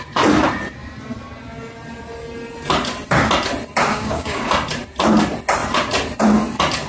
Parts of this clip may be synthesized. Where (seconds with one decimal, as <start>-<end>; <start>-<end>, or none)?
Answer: 3.9-4.5